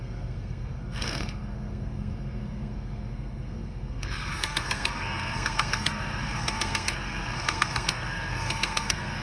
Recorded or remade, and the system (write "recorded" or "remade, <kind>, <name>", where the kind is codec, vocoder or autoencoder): remade, codec, SNAC